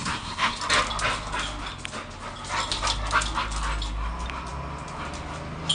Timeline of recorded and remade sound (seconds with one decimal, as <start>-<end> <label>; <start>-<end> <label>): 0.0-0.6 remade; 0.6-5.7 recorded